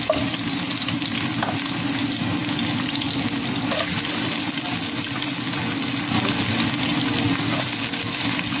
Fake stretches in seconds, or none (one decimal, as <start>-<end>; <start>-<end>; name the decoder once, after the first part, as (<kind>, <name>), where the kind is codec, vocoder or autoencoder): none